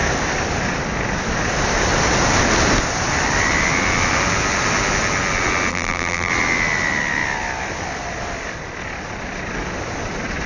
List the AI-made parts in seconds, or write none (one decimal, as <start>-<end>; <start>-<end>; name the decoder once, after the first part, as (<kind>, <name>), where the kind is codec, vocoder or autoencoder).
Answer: 5.7-6.3 (vocoder, BigVGAN v2)